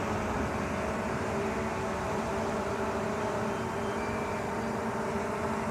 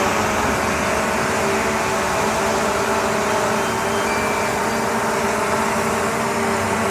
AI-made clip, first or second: first